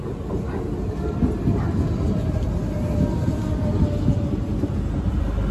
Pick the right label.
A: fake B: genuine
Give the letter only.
B